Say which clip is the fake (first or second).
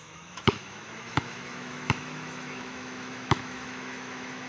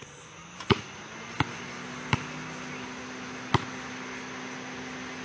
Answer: first